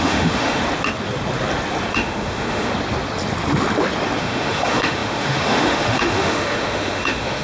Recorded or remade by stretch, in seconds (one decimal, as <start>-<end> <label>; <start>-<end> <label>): 0.0-0.6 remade; 0.6-1.9 recorded; 1.9-2.7 remade; 2.7-4.2 recorded; 4.2-7.4 remade